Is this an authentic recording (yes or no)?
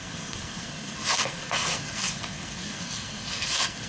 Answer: no